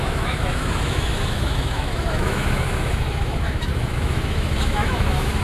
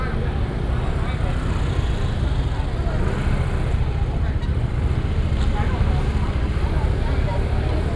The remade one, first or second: first